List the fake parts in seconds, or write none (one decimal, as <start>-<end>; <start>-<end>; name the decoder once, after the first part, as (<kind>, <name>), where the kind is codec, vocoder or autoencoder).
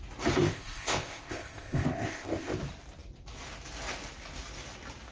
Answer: 0.4-2.6 (codec, ZipCodec)